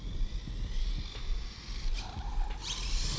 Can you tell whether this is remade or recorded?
recorded